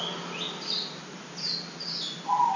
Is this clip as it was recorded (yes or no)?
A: yes